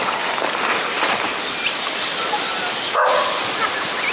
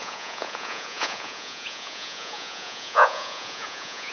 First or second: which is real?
first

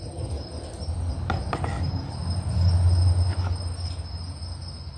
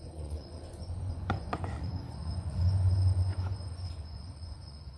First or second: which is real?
first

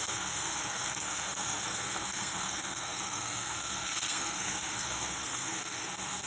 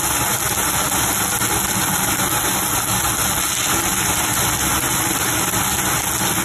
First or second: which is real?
second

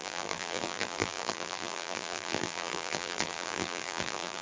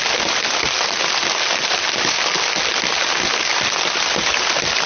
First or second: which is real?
second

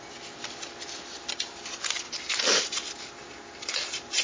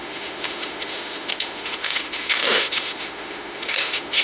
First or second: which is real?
first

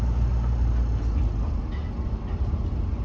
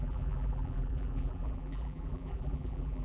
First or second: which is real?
first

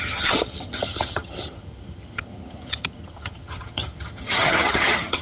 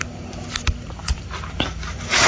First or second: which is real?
second